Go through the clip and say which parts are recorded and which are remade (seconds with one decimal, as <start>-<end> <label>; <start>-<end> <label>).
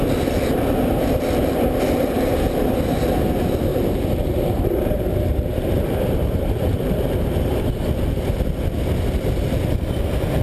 0.0-3.7 recorded; 3.7-7.6 remade; 7.6-10.4 recorded